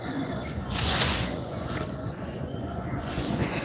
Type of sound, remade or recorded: remade